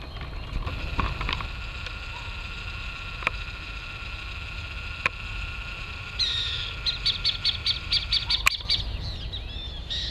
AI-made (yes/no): no